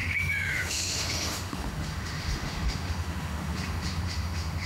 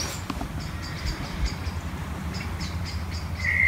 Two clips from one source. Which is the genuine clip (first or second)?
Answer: second